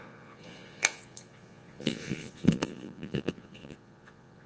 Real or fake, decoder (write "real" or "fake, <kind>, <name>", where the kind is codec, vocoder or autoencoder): fake, vocoder, Vocos